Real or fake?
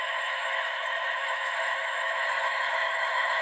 fake